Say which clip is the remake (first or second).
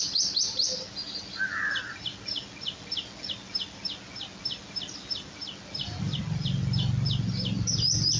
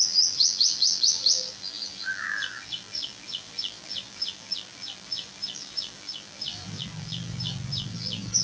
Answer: second